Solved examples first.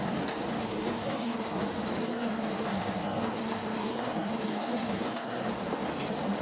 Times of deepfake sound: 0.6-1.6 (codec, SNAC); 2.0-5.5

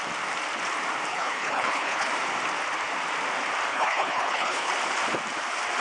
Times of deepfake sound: 1.1-2.1 (codec, HILCodec); 3.7-4.7

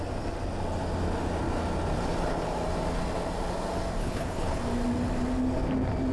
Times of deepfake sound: 4.0-4.6 (codec, HILCodec)